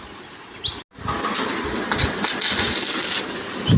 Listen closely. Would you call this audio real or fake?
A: real